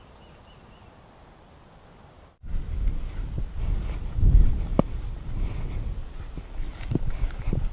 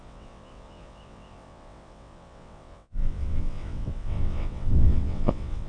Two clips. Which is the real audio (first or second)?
first